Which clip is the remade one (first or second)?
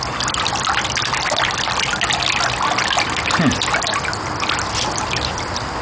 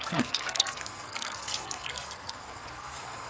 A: second